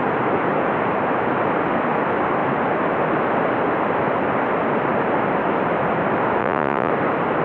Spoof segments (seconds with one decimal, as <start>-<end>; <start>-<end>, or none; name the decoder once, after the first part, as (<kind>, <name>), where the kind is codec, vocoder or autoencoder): 6.4-6.9 (vocoder, Vocos)